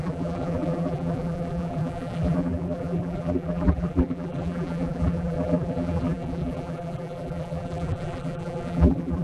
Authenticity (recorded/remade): remade